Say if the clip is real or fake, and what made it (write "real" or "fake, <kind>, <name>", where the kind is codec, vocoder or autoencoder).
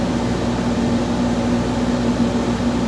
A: real